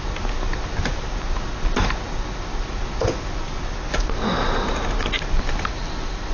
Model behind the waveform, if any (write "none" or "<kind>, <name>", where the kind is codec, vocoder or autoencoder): none